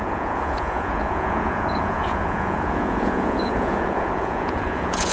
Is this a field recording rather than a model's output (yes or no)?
no